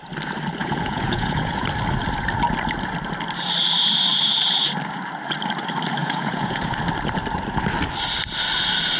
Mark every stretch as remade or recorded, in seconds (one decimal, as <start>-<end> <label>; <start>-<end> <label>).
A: 0.0-0.6 recorded; 0.6-1.6 remade; 1.6-6.0 recorded; 6.0-6.7 remade; 6.7-9.0 recorded